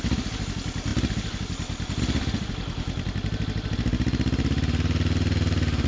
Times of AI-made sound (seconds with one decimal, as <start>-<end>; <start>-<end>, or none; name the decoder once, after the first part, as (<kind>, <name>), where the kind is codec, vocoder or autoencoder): none

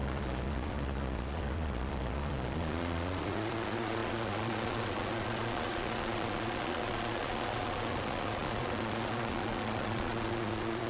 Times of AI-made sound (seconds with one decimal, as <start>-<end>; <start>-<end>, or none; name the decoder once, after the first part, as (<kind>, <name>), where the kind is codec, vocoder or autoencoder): 0.0-10.9 (vocoder, Vocos)

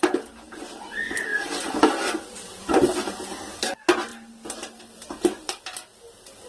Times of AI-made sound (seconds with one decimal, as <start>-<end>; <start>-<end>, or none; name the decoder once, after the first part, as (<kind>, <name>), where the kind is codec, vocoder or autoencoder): 1.3-2.6 (vocoder, BigVGAN v2); 4.1-5.6

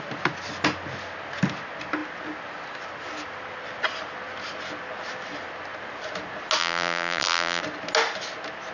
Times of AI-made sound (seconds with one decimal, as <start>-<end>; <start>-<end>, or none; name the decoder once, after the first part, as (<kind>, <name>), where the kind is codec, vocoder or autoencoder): 6.6-7.6 (vocoder, BigVGAN v2)

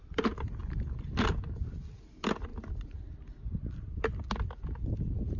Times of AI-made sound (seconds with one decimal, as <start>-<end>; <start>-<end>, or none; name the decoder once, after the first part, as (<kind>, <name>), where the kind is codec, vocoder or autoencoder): 0.6-1.7 (vocoder, BigVGAN v2)

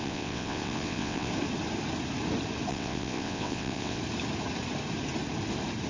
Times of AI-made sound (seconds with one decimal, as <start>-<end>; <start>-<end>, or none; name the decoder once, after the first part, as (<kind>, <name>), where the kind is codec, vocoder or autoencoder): 0.0-1.3 (vocoder, WaveNeXt); 2.7-4.0

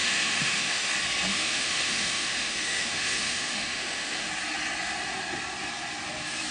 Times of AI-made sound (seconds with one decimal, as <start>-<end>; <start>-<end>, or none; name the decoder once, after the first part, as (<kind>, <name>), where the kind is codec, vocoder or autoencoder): 0.0-0.9 (autoencoder, DAC-VAE); 1.3-4.3